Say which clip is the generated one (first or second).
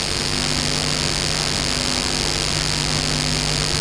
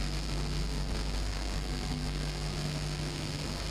second